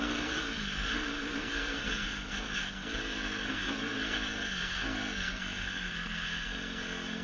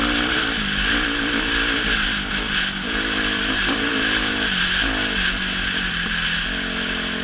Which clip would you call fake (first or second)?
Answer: first